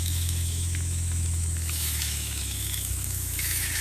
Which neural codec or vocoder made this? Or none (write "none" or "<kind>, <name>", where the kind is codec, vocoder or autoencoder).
autoencoder, DAC-VAE